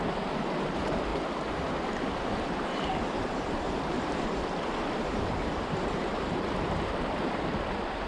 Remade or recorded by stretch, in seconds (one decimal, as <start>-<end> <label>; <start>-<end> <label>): 0.0-1.1 remade; 1.1-1.9 recorded; 1.9-8.1 remade